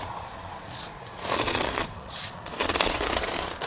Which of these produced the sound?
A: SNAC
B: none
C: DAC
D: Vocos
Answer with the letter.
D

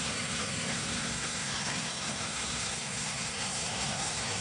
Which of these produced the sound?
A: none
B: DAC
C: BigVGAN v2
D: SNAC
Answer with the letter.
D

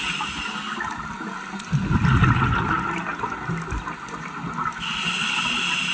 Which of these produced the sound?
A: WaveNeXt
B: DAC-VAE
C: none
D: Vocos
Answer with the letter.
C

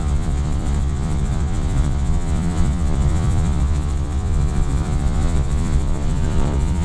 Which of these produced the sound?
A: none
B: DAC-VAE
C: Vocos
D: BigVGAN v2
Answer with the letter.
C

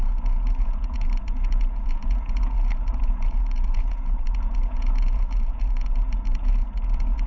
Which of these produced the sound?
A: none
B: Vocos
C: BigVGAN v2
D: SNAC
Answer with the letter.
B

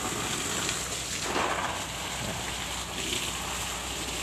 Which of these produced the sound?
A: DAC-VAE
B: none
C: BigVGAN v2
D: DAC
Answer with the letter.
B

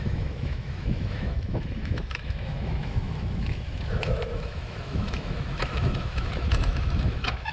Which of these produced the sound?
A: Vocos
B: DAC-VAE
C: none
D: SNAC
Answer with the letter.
B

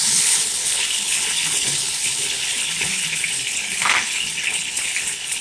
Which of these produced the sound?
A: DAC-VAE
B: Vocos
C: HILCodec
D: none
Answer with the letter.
C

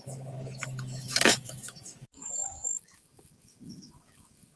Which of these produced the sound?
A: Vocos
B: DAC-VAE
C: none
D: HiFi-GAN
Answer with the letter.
B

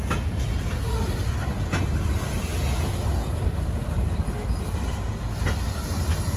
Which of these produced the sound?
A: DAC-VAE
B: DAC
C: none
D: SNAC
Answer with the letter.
C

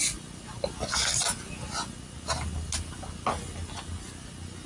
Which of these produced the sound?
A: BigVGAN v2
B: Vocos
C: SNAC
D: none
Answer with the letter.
D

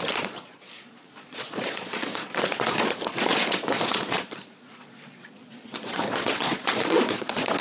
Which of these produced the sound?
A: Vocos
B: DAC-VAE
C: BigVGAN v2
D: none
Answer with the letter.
A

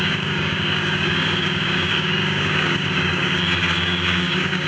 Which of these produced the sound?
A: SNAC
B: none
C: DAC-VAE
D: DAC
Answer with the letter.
D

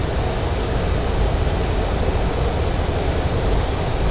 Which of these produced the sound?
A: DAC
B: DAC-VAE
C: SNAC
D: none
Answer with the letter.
D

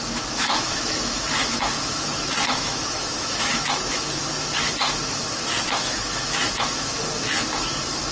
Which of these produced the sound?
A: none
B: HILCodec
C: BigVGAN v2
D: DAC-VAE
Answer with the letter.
D